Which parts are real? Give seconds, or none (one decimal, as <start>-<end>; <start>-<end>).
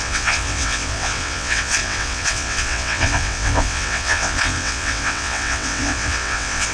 none